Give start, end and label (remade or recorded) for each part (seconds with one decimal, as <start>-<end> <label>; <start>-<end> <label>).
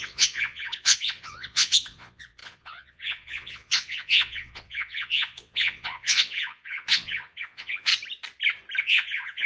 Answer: 0.0-7.9 remade; 7.9-8.8 recorded; 8.8-9.5 remade